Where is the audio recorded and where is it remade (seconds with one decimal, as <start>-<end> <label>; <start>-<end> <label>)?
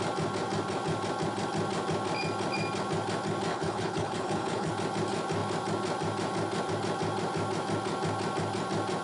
0.0-3.5 recorded; 3.5-4.7 remade; 4.7-9.0 recorded